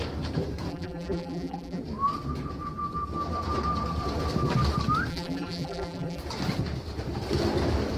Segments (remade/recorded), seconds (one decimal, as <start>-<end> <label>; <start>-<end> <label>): 0.0-0.7 recorded; 0.7-1.8 remade; 1.8-5.1 recorded; 5.1-6.2 remade; 6.2-8.0 recorded